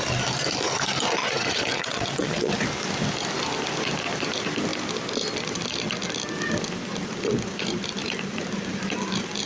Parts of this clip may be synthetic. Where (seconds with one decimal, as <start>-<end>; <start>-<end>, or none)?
1.2-2.5